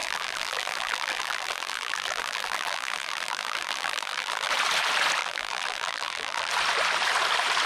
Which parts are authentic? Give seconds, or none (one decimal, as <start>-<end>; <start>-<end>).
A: 4.5-5.2; 6.5-7.7